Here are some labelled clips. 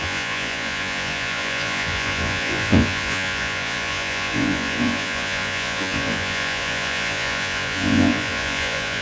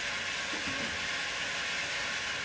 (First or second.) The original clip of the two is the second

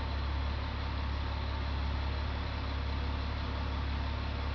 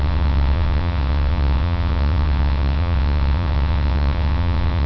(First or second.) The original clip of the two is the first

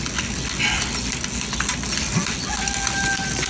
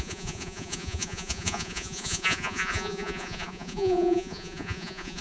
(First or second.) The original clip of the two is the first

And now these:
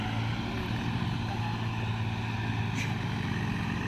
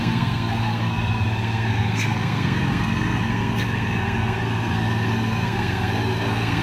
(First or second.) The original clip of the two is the first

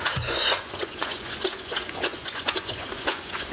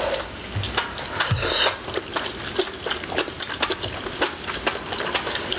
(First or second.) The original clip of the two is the second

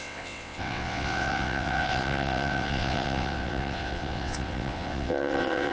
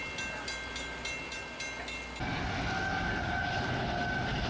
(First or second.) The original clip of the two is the second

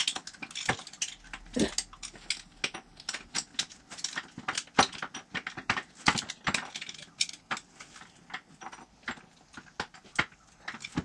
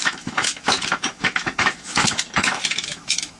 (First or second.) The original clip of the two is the first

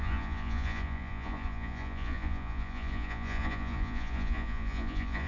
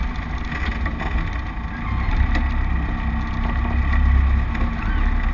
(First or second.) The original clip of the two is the second